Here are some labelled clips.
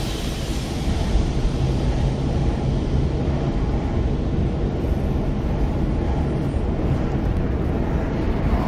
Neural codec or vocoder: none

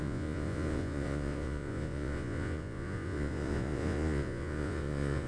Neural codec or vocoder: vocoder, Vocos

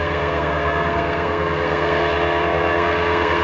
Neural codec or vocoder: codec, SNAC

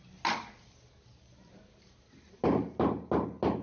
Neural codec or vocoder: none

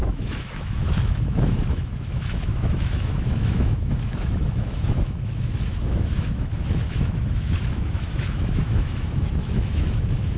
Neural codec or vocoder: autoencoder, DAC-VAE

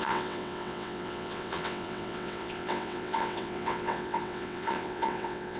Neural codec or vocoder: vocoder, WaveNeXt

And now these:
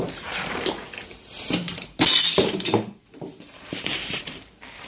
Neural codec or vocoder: vocoder, BigVGAN v2